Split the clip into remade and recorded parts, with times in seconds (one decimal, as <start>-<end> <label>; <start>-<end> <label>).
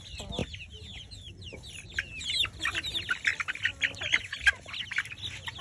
0.0-5.6 recorded